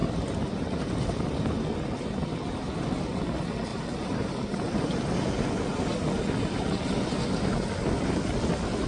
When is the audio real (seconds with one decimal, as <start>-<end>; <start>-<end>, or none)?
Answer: 0.8-3.7; 5.0-8.9